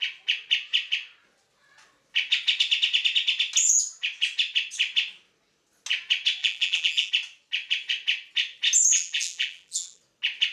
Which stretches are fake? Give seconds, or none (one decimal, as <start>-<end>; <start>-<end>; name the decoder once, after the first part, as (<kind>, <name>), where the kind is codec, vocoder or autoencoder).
6.4-7.1 (vocoder, BigVGAN v2); 8.9-10.0